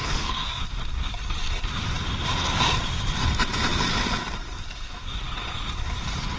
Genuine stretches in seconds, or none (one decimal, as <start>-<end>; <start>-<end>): 0.6-6.4